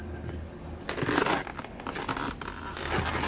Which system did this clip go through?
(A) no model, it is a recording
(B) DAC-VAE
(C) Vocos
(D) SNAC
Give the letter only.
A